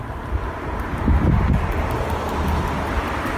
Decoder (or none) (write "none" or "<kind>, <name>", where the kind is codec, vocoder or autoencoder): none